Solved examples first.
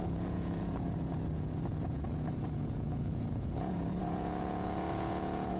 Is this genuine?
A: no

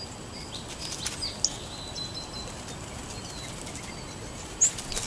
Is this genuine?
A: yes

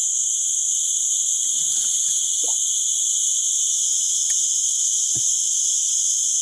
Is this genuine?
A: yes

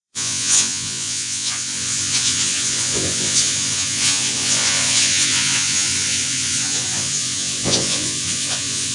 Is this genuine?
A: no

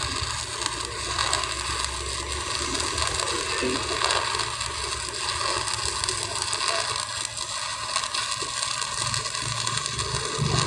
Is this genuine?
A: yes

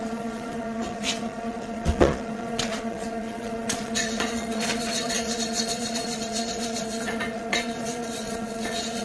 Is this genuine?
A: no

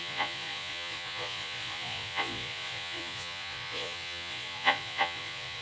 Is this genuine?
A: no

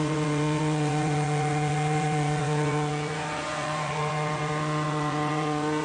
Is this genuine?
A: no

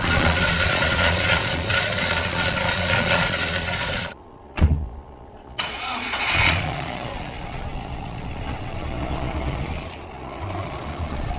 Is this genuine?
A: no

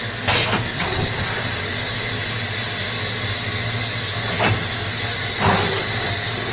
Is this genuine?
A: yes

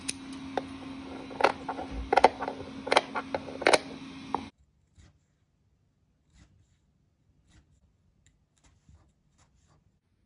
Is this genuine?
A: yes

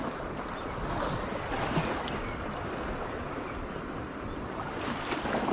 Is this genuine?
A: yes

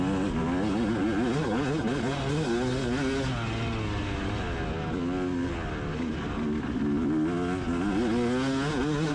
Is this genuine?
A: yes